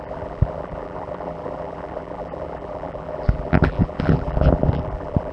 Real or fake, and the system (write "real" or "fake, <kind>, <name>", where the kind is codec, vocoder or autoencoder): fake, vocoder, BigVGAN v2